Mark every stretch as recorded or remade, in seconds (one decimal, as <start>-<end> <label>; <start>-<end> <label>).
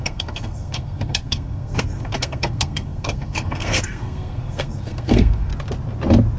0.0-5.5 remade; 5.5-6.4 recorded